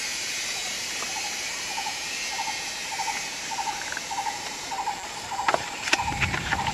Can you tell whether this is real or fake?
fake